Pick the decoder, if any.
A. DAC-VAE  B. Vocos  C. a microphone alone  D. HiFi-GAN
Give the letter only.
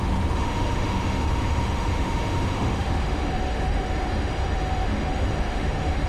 A